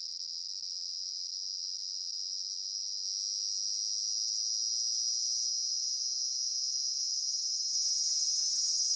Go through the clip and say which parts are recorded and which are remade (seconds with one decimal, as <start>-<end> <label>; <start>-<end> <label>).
0.0-9.0 recorded